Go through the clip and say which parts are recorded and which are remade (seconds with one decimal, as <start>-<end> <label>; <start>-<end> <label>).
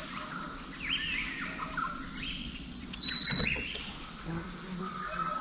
0.0-2.4 recorded; 2.4-3.9 remade; 3.9-5.4 recorded